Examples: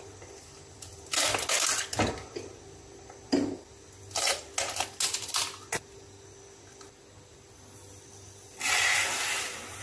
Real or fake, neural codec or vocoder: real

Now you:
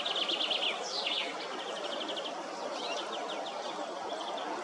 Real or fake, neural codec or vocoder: real